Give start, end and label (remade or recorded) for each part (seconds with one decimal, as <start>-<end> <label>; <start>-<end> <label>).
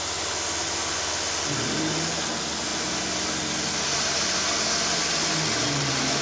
0.0-6.2 recorded